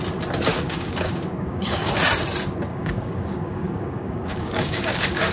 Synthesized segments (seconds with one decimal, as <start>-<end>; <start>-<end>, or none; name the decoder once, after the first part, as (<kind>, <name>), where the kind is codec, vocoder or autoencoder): 0.5-1.9 (codec, DAC); 2.7-5.3

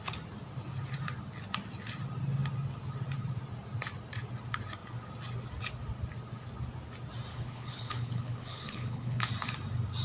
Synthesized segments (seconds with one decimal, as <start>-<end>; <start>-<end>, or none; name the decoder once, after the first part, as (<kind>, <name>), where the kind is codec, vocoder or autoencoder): 7.3-9.3 (codec, HILCodec)

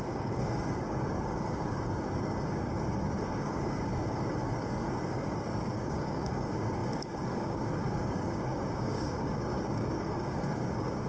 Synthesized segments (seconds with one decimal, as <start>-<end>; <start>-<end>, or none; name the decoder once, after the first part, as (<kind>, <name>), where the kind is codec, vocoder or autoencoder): 0.0-11.1 (codec, DAC)

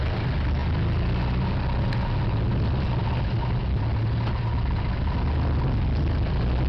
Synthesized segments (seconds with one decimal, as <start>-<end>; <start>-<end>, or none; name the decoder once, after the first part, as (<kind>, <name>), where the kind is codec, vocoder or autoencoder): none

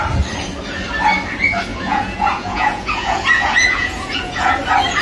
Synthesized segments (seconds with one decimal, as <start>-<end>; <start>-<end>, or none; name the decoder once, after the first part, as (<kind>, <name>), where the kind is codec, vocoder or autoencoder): 1.7-4.6 (vocoder, Vocos)

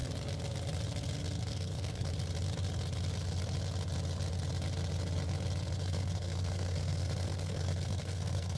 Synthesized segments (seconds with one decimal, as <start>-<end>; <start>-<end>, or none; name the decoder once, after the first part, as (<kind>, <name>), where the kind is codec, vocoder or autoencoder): 1.5-2.1 (codec, SNAC); 5.8-8.6